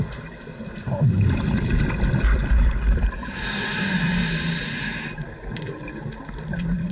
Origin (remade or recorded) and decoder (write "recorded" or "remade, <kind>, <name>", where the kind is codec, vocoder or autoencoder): recorded